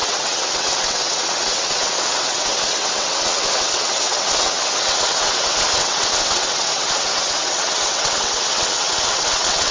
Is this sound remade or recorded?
remade